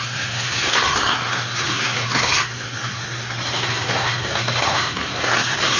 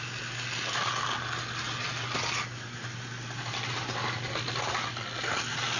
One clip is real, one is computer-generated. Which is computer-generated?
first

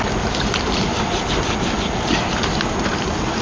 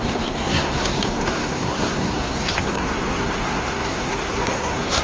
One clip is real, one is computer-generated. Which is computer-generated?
second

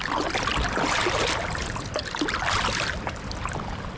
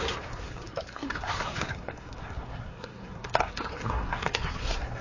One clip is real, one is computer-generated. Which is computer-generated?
second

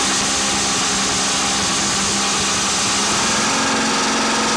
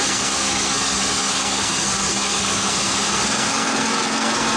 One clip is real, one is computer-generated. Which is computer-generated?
second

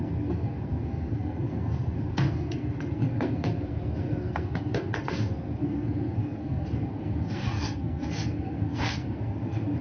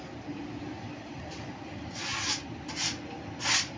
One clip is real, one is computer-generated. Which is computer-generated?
first